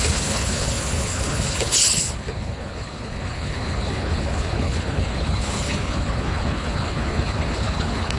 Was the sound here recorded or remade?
remade